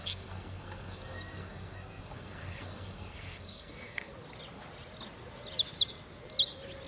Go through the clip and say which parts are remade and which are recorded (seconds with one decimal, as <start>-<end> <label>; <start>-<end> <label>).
0.0-4.1 remade; 4.1-6.9 recorded